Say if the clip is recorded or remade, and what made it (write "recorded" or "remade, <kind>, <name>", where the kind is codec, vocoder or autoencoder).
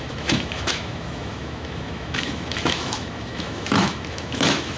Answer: remade, autoencoder, DAC-VAE